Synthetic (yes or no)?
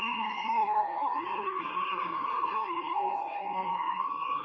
yes